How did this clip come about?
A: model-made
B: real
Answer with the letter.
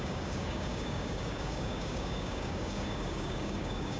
A